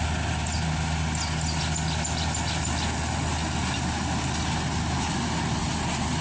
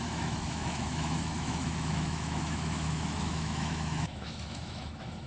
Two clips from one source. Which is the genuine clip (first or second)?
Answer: first